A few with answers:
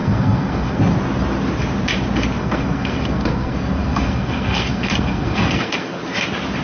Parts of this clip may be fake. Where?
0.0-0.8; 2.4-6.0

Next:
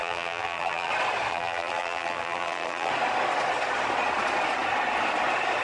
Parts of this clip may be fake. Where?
0.0-0.9; 1.3-2.9